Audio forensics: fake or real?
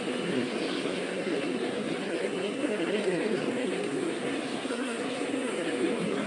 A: fake